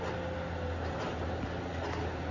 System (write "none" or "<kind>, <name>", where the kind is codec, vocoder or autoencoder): none